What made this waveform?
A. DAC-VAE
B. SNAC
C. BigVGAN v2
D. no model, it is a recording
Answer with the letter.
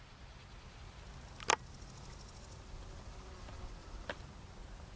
D